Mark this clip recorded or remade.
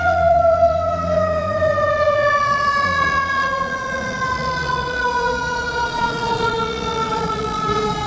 remade